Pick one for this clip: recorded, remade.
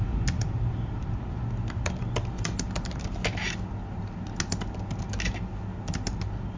recorded